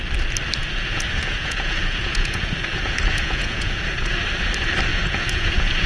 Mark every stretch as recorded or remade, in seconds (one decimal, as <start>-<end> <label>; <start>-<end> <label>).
0.0-0.6 recorded; 0.6-4.1 remade; 4.1-4.9 recorded; 4.9-5.9 remade